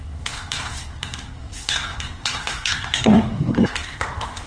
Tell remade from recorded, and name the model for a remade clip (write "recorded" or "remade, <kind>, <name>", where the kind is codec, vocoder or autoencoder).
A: remade, codec, SNAC